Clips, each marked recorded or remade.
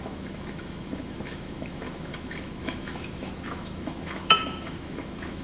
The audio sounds remade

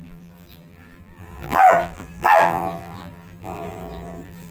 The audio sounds remade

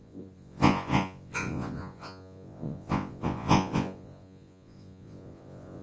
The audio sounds remade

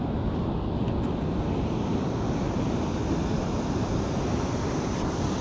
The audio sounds recorded